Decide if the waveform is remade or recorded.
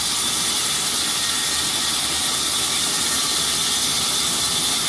recorded